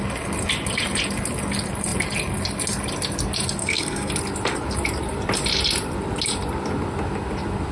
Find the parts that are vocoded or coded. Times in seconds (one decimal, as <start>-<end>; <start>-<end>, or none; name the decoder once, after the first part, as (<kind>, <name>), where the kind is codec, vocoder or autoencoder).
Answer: 3.6-4.1 (codec, SNAC)